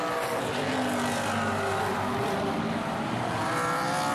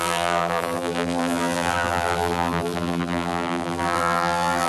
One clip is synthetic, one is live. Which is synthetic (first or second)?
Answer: second